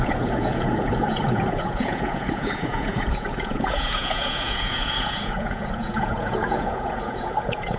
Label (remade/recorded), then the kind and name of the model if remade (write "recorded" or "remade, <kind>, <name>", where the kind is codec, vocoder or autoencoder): remade, vocoder, Vocos